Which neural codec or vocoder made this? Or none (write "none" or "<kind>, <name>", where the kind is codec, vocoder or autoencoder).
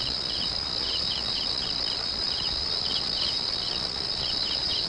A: vocoder, Vocos